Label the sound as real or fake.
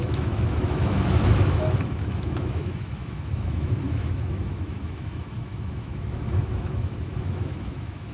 fake